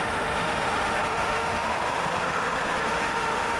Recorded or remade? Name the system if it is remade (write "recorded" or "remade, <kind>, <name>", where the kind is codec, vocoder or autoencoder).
remade, autoencoder, DAC-VAE